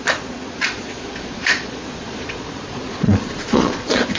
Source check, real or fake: fake